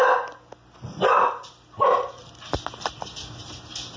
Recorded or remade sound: recorded